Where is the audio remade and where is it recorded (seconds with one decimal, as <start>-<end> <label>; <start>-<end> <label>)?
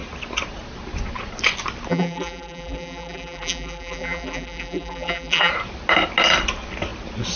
0.0-1.9 recorded; 1.9-5.5 remade; 5.5-7.4 recorded